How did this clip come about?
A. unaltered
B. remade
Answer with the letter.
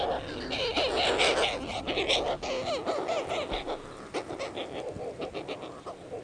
A